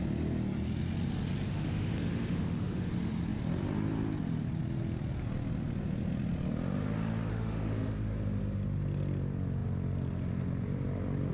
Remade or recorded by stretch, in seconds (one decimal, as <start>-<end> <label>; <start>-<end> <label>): 0.0-1.5 recorded; 1.5-2.9 remade; 2.9-7.3 recorded; 7.3-7.9 remade; 7.9-11.3 recorded

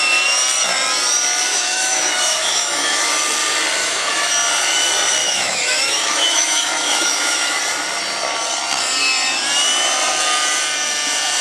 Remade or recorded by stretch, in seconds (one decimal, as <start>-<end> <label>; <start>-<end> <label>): 0.0-1.5 recorded; 1.5-3.1 remade; 3.1-3.8 recorded; 3.8-4.3 remade; 4.3-5.2 recorded; 5.2-7.6 remade; 7.6-11.4 recorded

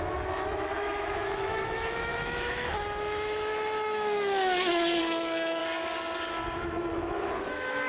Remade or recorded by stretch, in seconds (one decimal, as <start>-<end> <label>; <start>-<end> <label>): 0.0-5.6 remade; 5.6-6.6 recorded; 6.6-7.9 remade